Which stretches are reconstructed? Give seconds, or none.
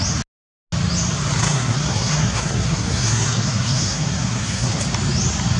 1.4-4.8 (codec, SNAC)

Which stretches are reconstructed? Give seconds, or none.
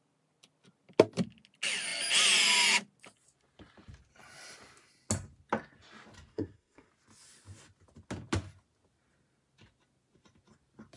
6.3-6.9 (codec, SNAC)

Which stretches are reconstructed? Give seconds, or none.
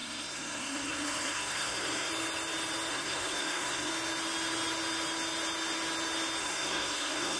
0.0-2.1 (codec, SNAC); 2.9-3.9; 6.4-7.4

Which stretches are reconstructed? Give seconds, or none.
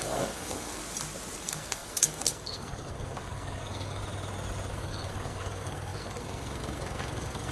0.0-0.8 (codec, SNAC); 1.4-4.0; 4.7-7.5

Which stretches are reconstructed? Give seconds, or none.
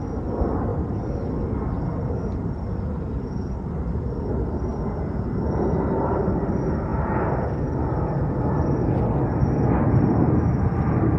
none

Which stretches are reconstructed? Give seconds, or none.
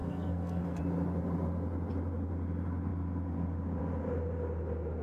0.0-0.8 (codec, SNAC)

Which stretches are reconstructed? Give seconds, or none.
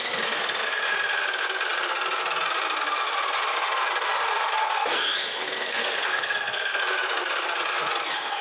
4.9-6.8 (codec, SNAC)